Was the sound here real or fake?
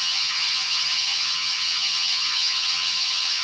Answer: fake